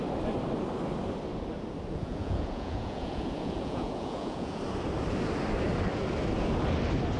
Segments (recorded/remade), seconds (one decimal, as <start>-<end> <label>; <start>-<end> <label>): 0.0-1.9 recorded; 1.9-4.6 remade; 4.6-7.2 recorded